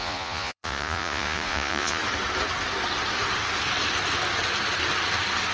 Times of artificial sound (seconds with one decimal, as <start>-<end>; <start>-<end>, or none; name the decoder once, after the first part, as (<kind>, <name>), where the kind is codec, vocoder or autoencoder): 0.0-2.0 (vocoder, Vocos)